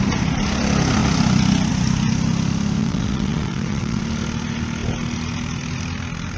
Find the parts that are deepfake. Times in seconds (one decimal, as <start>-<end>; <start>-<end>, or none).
2.8-4.0